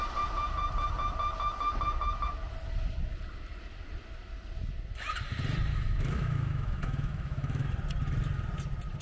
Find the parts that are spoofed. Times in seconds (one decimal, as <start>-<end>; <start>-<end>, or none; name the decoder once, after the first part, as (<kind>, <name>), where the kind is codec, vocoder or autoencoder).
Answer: 5.7-7.6 (autoencoder, DAC-VAE)